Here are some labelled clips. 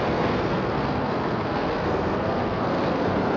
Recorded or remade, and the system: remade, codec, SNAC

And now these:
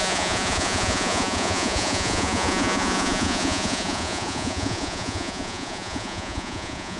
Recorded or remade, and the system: remade, vocoder, Vocos